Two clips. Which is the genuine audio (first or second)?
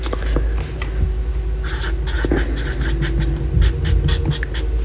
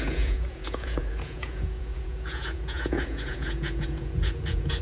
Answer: first